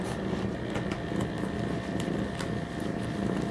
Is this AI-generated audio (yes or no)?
no